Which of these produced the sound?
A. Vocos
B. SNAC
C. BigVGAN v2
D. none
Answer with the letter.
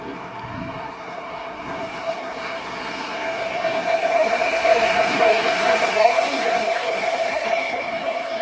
B